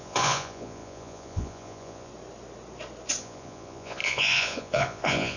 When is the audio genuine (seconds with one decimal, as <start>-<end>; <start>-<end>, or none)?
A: 2.1-3.2